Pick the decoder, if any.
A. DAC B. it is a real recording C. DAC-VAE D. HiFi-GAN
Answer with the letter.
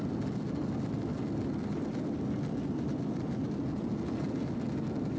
B